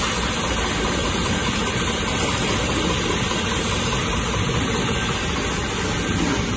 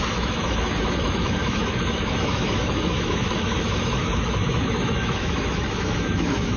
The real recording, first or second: first